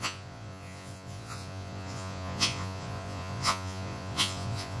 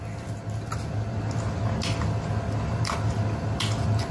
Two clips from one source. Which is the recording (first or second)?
second